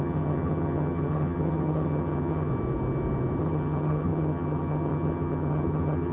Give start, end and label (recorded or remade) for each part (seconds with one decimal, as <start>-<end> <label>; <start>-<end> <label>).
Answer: 0.0-2.5 remade; 2.5-3.4 recorded; 3.4-6.1 remade